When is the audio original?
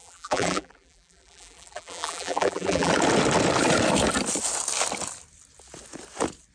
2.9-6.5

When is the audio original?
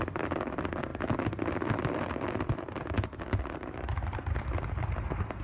0.0-5.4